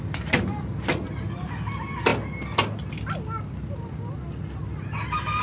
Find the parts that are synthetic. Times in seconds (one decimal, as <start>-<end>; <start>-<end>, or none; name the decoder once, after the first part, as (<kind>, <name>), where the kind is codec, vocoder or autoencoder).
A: none

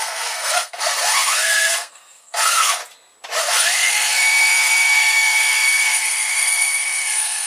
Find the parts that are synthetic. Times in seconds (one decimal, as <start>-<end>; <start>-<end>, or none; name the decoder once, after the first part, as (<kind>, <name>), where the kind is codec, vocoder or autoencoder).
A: 0.0-2.8 (codec, SNAC); 3.4-7.5